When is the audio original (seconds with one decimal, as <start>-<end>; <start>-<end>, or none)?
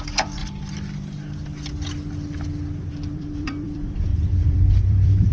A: 0.4-2.9